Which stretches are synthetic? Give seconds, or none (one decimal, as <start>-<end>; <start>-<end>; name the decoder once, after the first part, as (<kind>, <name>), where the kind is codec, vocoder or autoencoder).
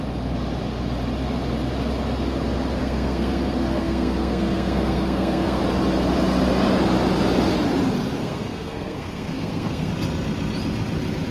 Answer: 2.8-5.6 (codec, SNAC); 8.2-9.9